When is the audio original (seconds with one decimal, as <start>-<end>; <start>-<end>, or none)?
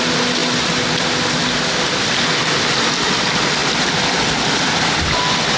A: 0.0-5.6